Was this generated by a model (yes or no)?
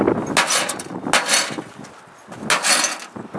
no